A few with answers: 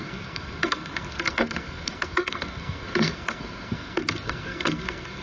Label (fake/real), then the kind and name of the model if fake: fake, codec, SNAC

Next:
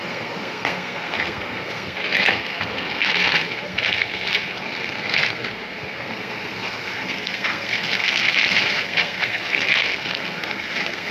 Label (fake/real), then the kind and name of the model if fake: fake, codec, SNAC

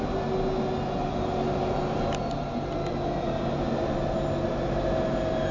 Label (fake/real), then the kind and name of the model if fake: real